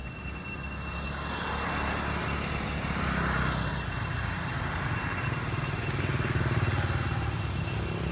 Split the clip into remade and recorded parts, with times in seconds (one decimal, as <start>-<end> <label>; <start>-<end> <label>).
0.0-8.1 recorded